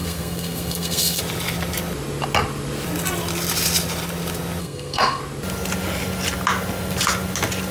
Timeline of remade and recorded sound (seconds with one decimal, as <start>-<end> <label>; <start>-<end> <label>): 0.0-1.2 remade; 1.2-4.6 recorded; 4.6-5.2 remade; 5.2-7.7 recorded